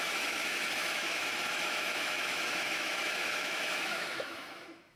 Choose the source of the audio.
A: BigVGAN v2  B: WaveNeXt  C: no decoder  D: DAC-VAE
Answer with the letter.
D